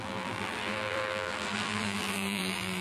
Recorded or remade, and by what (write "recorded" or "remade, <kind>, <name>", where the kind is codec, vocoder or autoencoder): remade, vocoder, BigVGAN v2